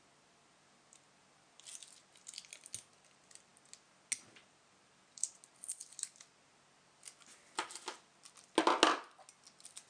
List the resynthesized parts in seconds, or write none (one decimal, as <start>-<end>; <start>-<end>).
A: none